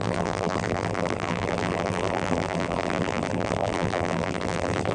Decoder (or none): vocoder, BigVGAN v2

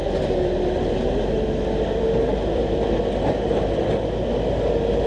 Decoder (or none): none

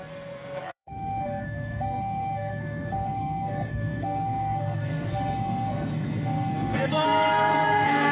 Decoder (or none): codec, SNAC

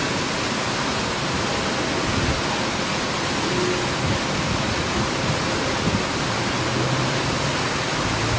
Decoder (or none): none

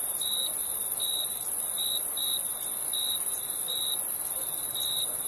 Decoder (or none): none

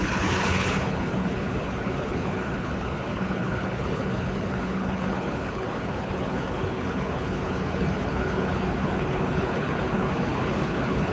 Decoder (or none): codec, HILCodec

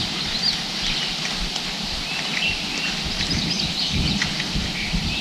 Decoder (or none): none